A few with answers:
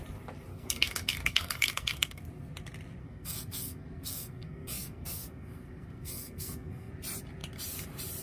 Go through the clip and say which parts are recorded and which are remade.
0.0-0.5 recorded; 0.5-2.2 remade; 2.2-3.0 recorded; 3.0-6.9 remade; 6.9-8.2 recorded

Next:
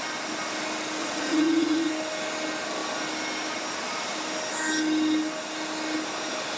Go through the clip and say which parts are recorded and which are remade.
0.0-1.0 recorded; 1.0-1.9 remade; 1.9-6.6 recorded

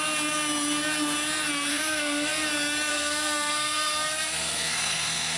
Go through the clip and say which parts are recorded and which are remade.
0.0-1.7 recorded; 1.7-2.3 remade; 2.3-2.9 recorded; 2.9-5.4 remade

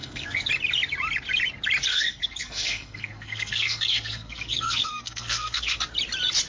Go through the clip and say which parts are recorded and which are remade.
0.0-0.5 remade; 0.5-1.9 recorded; 1.9-5.8 remade; 5.8-6.5 recorded

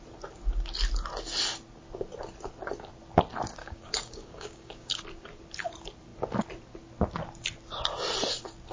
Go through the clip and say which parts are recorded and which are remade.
0.0-3.6 recorded; 3.6-5.0 remade; 5.0-8.7 recorded